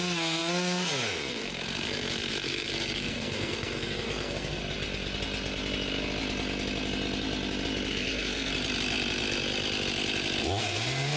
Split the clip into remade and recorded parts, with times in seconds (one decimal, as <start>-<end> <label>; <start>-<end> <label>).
0.0-4.6 remade; 4.6-7.9 recorded; 7.9-8.5 remade; 8.5-10.6 recorded; 10.6-11.2 remade